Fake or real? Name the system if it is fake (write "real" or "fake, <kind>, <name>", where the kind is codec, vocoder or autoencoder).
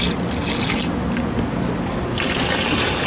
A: real